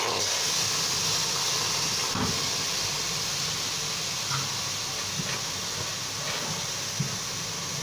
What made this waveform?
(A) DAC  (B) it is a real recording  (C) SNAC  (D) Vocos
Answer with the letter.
B